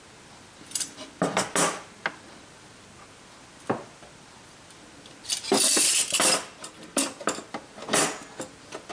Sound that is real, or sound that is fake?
real